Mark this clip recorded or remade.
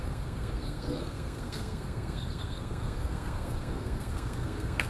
remade